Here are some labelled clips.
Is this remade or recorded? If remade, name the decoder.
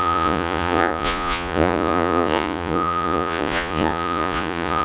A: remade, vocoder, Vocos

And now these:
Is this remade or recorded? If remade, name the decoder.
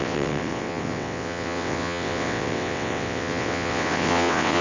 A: remade, vocoder, WaveNeXt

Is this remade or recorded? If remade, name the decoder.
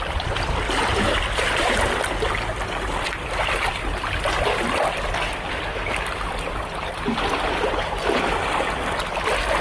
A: recorded